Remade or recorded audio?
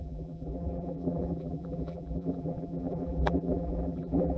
remade